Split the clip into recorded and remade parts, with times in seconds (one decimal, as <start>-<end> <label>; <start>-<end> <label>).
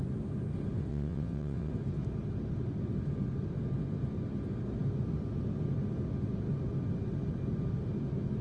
0.0-0.9 recorded; 0.9-1.7 remade; 1.7-8.4 recorded